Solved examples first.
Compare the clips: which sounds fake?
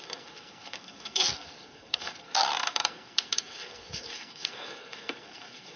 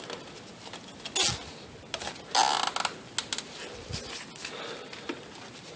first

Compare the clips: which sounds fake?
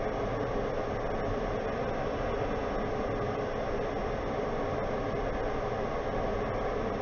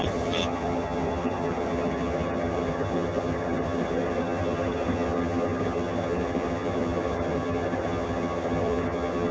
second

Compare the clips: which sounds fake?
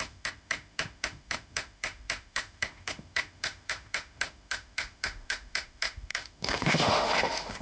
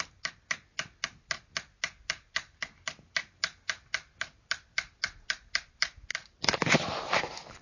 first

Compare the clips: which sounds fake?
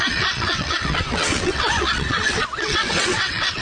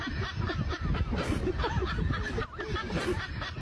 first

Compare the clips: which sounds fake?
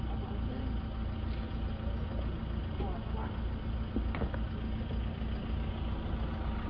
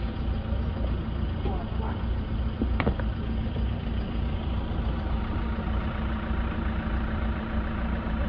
second